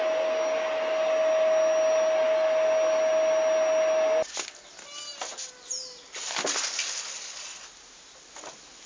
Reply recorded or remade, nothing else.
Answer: recorded